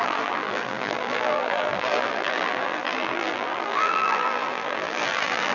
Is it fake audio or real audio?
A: fake